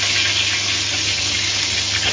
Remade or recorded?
recorded